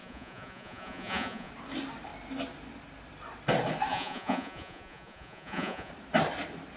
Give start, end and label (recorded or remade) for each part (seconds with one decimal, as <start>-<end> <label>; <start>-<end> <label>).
0.0-1.5 remade; 1.5-3.9 recorded; 3.9-5.9 remade; 5.9-6.8 recorded

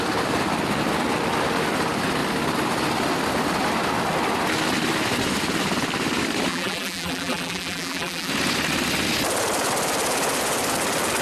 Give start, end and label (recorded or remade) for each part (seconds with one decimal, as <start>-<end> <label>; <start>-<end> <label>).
0.0-6.5 recorded; 6.5-8.3 remade; 8.3-11.2 recorded